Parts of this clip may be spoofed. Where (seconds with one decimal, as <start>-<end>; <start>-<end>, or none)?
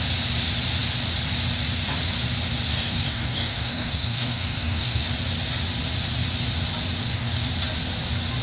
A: 2.7-5.1; 7.0-7.5